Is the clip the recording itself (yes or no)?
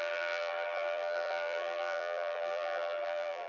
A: no